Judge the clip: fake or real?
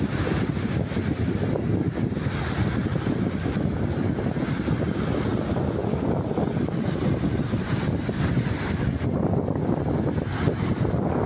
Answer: real